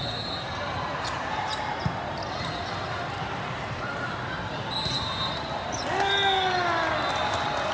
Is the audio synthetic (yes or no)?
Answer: no